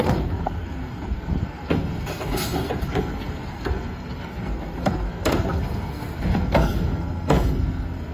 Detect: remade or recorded remade